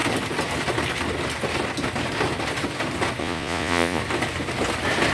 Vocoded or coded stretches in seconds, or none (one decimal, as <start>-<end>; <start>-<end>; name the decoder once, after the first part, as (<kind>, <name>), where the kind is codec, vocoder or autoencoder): 3.2-4.0 (vocoder, Vocos)